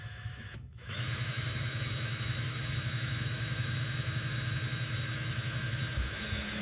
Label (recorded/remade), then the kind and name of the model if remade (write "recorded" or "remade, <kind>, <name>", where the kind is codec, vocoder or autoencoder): remade, autoencoder, DAC-VAE